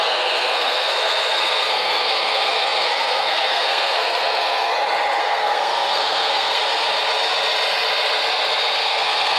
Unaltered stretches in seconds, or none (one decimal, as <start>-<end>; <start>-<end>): 4.7-5.2; 6.6-8.8